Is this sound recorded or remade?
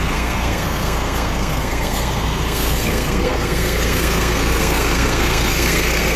remade